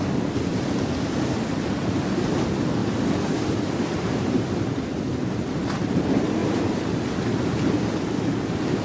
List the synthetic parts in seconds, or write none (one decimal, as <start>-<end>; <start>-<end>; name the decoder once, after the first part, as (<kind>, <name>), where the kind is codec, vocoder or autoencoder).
0.5-1.4 (vocoder, BigVGAN v2); 2.8-4.5; 4.9-6.0; 6.4-7.4